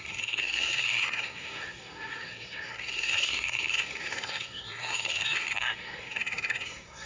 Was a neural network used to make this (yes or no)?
yes